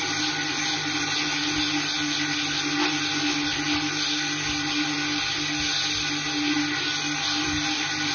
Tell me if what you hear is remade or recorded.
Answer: recorded